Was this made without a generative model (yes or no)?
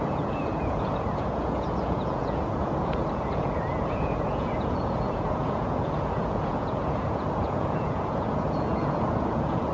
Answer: no